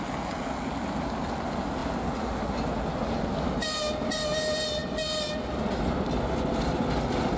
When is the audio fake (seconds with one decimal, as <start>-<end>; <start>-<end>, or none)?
none